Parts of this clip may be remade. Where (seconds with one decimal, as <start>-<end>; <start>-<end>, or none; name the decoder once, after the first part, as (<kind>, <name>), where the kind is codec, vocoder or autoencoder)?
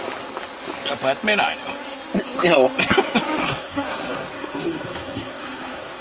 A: 3.4-6.0 (codec, SNAC)